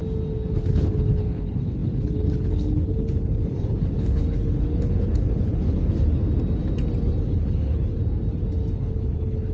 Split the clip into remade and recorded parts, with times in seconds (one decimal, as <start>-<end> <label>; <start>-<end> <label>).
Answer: 0.0-0.5 recorded; 0.5-6.1 remade; 6.1-7.2 recorded; 7.2-8.0 remade; 8.0-8.8 recorded; 8.8-9.5 remade